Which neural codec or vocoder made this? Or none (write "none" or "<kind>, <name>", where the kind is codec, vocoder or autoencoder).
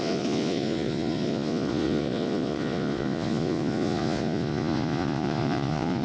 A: vocoder, Vocos